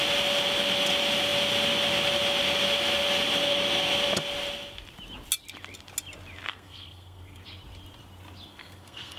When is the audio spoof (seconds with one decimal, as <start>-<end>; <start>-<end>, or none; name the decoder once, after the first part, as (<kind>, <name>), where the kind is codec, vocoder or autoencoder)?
6.5-7.4 (codec, SNAC); 8.5-9.2